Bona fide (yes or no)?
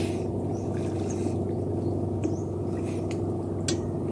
yes